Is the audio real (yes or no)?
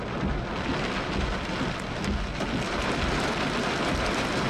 yes